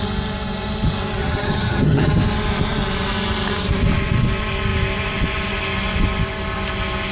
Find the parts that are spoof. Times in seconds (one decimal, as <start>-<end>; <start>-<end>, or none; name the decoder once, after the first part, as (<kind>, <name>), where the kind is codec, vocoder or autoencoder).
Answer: 1.2-2.1 (vocoder, HiFi-GAN)